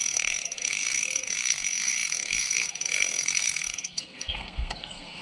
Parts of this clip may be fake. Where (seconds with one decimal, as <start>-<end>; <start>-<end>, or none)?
0.0-5.2